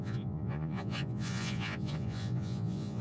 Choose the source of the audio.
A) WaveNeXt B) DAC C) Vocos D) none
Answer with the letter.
C